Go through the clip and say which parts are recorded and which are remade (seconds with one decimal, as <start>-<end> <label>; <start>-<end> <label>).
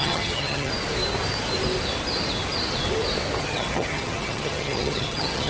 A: 0.0-0.7 remade; 0.7-3.4 recorded; 3.4-5.5 remade